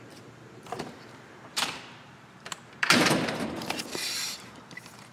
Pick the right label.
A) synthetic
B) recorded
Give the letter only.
A